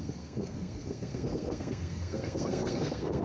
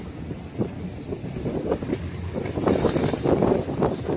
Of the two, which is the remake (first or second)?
first